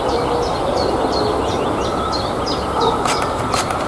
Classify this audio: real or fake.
real